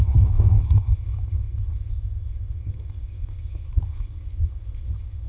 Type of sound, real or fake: fake